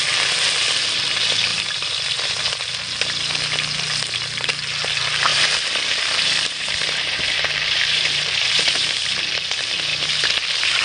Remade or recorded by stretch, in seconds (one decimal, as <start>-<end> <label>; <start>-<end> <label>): 0.0-5.3 recorded; 5.3-9.2 remade; 9.2-9.9 recorded; 9.9-10.8 remade